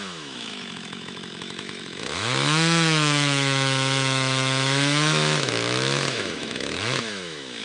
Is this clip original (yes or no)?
no